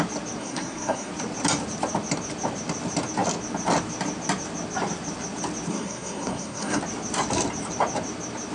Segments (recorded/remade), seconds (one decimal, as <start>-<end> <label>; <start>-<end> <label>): 0.0-0.4 recorded; 0.4-1.1 remade; 1.1-5.7 recorded; 5.7-6.8 remade; 6.8-8.5 recorded